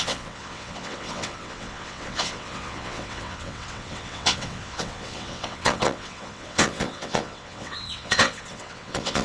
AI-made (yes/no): yes